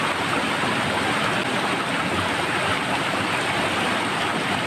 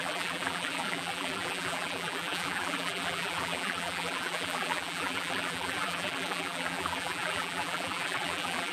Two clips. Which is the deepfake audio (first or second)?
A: second